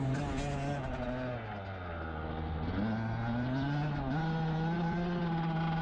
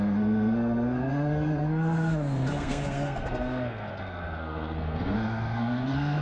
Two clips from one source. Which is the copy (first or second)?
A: second